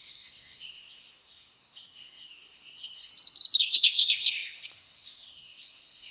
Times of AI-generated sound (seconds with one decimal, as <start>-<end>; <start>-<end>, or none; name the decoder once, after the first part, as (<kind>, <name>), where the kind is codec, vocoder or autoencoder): 0.0-3.1 (codec, SNAC); 3.6-6.1